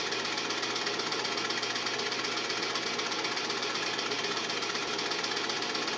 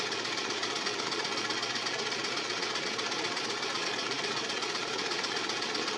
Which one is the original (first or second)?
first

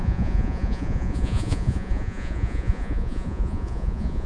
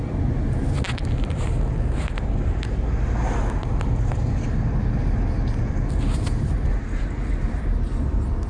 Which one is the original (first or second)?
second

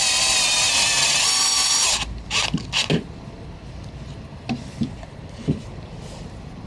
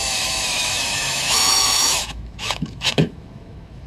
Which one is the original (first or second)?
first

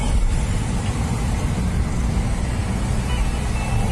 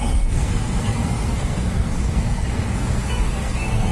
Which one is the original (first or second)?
first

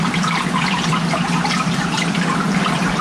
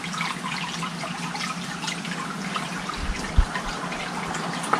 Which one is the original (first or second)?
second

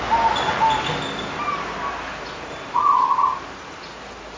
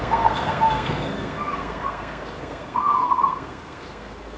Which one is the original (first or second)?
first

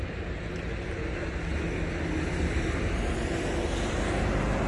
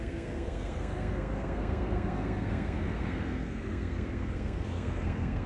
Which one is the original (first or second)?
first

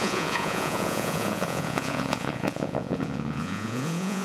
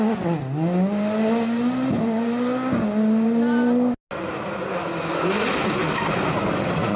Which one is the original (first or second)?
second